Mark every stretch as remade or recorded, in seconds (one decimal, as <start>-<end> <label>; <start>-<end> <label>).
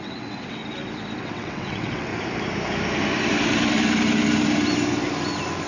0.0-0.6 remade; 0.6-1.2 recorded; 1.2-2.1 remade; 2.1-5.7 recorded